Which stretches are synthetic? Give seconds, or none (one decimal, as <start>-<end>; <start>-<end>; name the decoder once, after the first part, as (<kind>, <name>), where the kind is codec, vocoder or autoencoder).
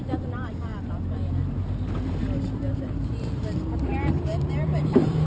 0.0-0.7 (vocoder, BigVGAN v2); 2.2-5.3